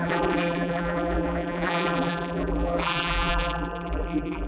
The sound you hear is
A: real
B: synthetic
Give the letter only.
B